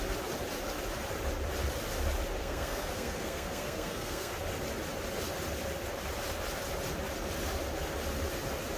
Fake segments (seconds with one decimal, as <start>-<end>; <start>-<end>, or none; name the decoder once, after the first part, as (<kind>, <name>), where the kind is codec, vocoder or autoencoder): 2.4-4.3 (codec, SNAC)